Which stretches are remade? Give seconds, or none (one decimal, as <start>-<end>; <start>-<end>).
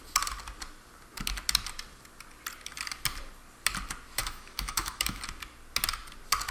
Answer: 4.2-5.2